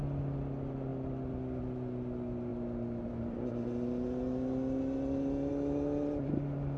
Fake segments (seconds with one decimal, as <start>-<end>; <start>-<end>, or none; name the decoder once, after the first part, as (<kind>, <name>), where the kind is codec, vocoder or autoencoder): none